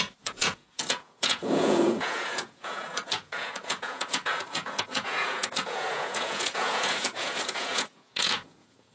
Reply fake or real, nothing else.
fake